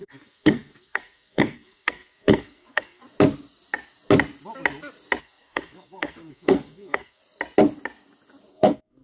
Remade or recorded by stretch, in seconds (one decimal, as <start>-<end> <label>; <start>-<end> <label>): 0.0-3.0 remade; 3.0-5.2 recorded; 5.2-7.2 remade; 7.2-8.5 recorded; 8.5-9.0 remade